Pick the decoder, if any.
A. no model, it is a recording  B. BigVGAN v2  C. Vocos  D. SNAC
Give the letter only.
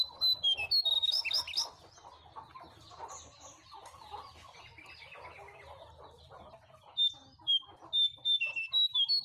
A